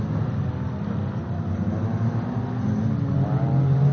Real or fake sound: real